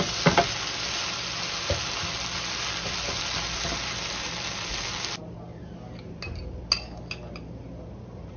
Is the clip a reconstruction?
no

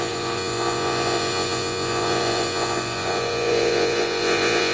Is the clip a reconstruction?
yes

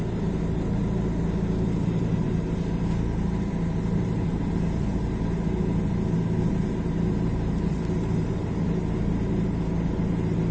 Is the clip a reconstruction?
no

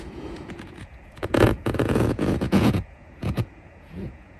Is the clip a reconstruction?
yes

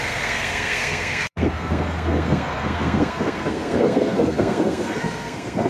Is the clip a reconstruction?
yes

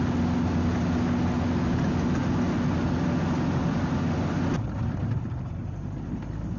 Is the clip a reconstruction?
no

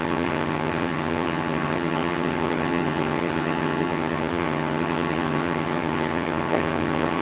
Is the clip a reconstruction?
yes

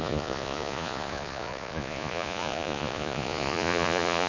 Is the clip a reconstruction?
yes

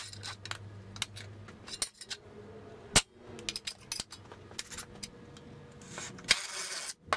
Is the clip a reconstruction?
no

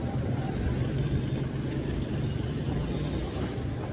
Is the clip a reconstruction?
no